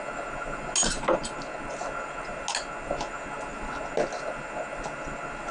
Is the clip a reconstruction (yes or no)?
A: no